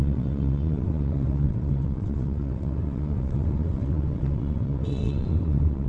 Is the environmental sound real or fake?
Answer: fake